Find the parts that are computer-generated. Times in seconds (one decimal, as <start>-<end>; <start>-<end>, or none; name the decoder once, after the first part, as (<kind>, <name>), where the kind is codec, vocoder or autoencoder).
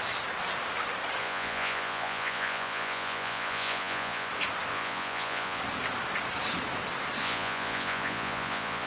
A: 1.2-4.3 (vocoder, Vocos); 4.7-5.6; 7.2-8.9